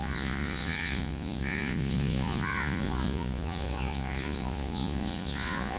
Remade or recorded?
remade